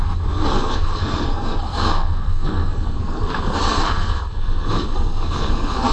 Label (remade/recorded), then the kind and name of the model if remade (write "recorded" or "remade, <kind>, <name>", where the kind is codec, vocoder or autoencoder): remade, codec, SNAC